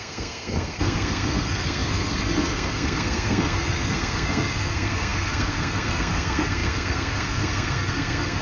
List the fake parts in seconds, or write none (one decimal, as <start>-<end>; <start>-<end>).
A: 0.0-8.4